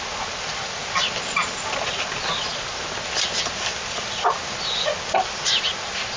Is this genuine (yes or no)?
yes